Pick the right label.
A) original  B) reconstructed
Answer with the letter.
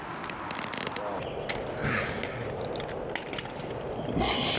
A